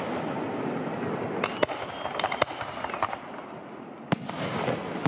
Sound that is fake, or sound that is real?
real